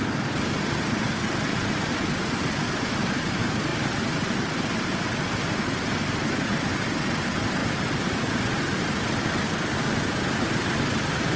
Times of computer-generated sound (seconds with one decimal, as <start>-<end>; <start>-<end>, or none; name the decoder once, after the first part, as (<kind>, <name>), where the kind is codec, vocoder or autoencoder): 1.5-2.5 (vocoder, BigVGAN v2); 3.7-5.4; 7.6-9.3